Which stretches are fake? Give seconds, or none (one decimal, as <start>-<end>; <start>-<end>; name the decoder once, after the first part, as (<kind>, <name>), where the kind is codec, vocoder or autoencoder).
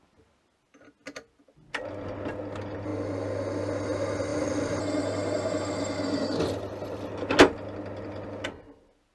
none